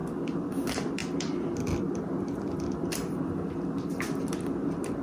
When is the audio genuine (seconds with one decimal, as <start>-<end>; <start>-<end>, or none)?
none